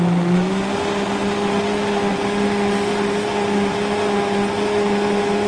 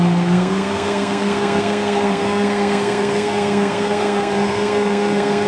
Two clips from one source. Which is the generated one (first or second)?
second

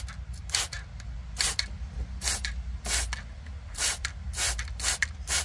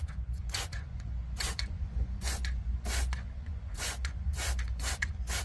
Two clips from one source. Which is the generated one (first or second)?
second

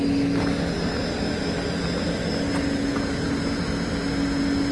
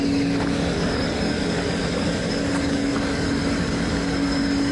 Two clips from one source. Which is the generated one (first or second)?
second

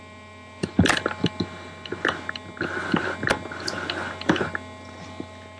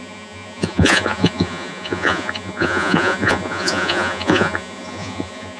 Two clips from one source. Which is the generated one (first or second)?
second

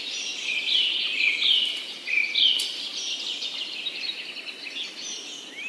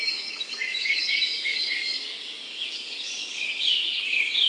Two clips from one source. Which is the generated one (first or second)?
second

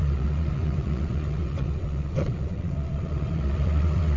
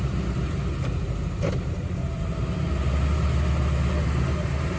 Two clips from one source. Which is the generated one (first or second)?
first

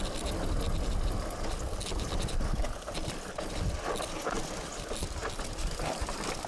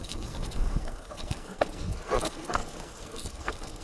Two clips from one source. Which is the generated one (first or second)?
second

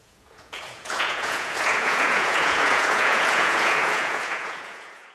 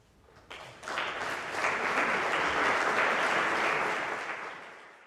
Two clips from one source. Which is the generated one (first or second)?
first